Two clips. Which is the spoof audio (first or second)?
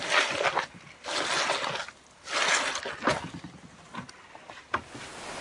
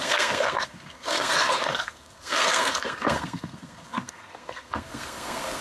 second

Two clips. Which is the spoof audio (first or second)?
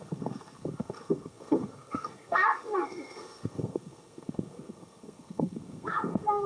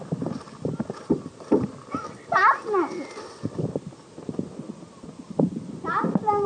first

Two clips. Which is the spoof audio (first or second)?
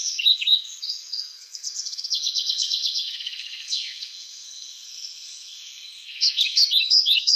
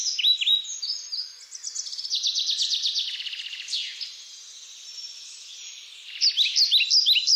first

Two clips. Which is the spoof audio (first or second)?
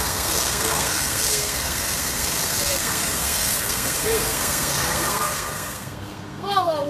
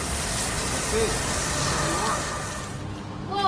first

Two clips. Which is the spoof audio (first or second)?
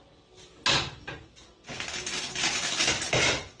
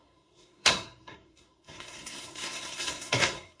second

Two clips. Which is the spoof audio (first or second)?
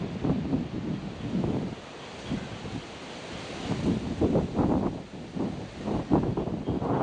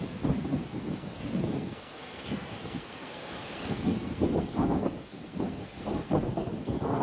second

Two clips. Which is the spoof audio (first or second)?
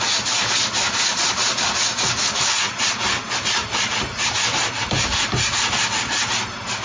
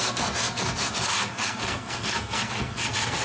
second